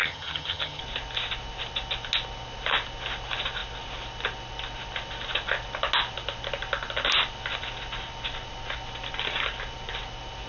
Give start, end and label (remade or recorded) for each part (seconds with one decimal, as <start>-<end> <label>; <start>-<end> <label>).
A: 0.0-0.8 remade; 0.8-10.5 recorded